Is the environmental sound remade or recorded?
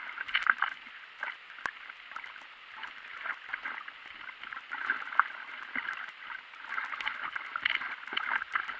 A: recorded